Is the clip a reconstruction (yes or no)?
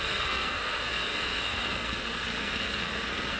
yes